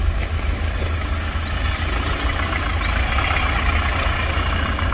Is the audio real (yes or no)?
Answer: yes